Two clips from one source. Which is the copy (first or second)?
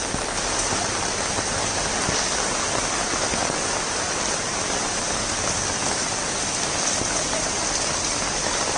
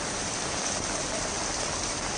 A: second